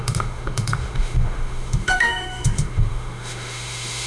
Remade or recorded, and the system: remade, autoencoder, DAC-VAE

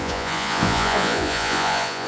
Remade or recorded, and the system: remade, vocoder, Vocos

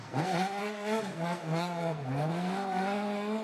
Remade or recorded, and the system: remade, codec, SNAC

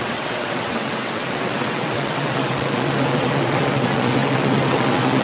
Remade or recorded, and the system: remade, vocoder, WaveNeXt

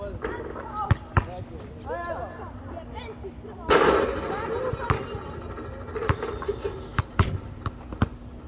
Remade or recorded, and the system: recorded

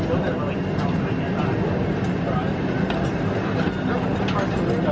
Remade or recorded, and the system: recorded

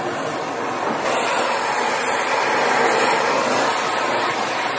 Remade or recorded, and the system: recorded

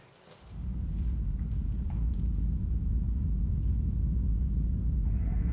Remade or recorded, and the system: recorded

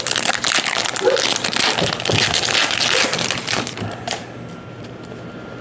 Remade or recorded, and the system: recorded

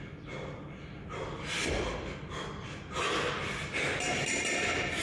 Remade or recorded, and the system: recorded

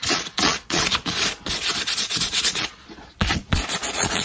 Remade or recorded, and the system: remade, vocoder, Vocos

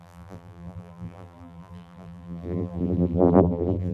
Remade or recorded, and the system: remade, vocoder, BigVGAN v2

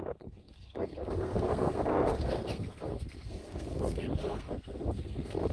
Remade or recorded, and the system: remade, codec, SNAC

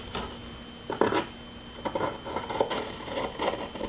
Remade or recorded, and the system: recorded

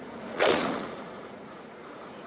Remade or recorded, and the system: remade, vocoder, Vocos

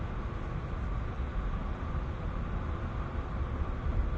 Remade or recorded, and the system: recorded